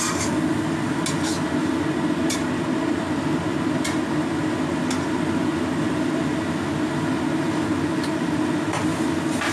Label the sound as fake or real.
real